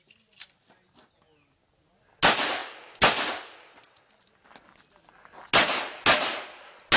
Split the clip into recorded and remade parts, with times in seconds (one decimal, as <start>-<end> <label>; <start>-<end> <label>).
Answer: 0.0-7.0 recorded